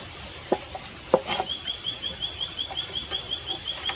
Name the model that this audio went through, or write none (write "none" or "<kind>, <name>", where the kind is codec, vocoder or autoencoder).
none